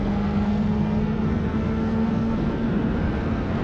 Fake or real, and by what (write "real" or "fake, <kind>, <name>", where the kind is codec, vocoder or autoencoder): fake, codec, SNAC